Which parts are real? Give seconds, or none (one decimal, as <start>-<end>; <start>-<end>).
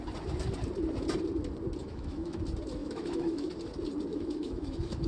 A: 0.0-1.8; 2.4-2.8; 3.5-4.1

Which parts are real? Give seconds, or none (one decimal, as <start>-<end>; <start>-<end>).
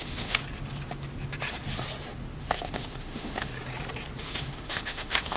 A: 0.4-2.4; 3.5-4.2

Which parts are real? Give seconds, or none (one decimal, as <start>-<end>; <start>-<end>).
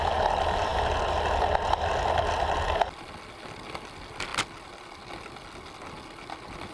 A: 0.0-6.7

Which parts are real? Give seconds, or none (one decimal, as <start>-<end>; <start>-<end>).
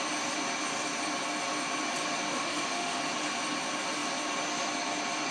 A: 0.0-2.3; 3.0-5.3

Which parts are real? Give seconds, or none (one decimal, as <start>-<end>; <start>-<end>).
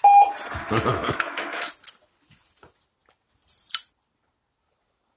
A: 0.0-0.9; 1.7-5.2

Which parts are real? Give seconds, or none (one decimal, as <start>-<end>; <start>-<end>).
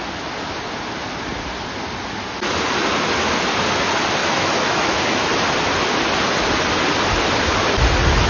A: 0.0-4.2; 5.3-8.3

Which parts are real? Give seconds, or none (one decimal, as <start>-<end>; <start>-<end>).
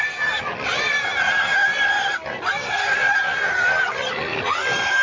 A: 0.0-5.0